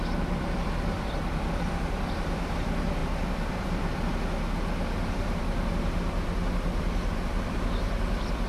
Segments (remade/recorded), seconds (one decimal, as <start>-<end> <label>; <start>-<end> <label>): 0.0-4.1 remade; 4.1-5.1 recorded; 5.1-8.5 remade